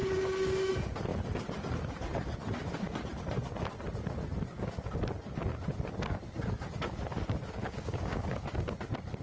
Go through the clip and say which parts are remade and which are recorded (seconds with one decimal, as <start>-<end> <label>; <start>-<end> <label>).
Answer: 0.0-0.7 remade; 0.7-7.6 recorded; 7.6-8.6 remade; 8.6-9.2 recorded